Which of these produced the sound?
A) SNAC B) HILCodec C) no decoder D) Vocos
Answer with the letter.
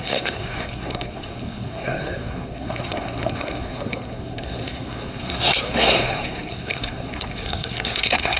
A